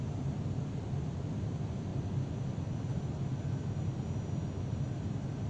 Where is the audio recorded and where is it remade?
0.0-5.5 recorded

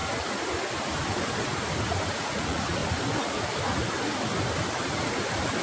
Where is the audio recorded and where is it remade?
0.0-2.1 recorded; 2.1-2.8 remade; 2.8-5.6 recorded

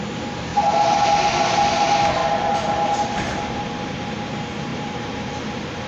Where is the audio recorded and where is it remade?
0.0-4.7 recorded; 4.7-5.4 remade; 5.4-5.9 recorded

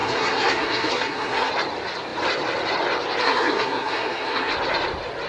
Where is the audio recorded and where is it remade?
0.0-1.5 remade; 1.5-3.2 recorded; 3.2-4.5 remade; 4.5-5.3 recorded

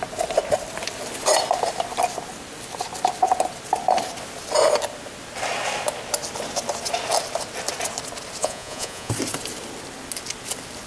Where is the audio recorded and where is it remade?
0.0-8.4 recorded; 8.4-9.1 remade; 9.1-10.9 recorded

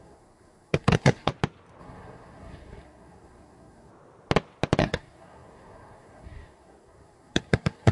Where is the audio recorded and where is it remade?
0.0-1.3 remade; 1.3-1.8 recorded; 1.8-3.9 remade; 3.9-4.8 recorded; 4.8-7.9 remade

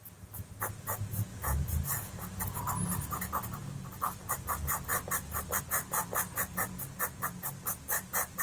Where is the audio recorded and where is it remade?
0.0-1.3 recorded; 1.3-2.6 remade; 2.6-8.4 recorded